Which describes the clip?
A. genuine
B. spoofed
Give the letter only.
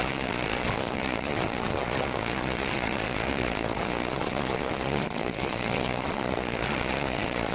B